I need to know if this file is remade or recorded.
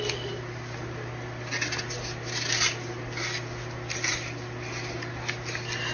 recorded